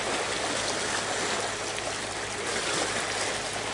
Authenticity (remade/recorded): recorded